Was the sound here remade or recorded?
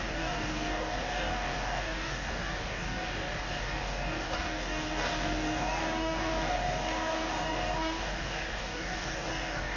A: remade